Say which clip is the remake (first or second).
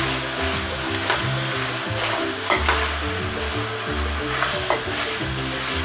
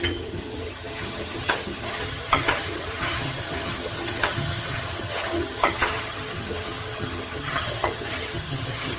second